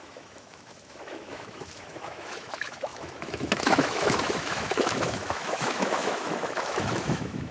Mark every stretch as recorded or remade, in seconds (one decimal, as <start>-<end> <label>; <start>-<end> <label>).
0.0-7.5 remade